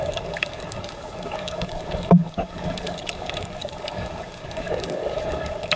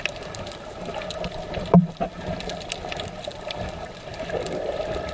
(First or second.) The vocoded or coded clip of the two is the first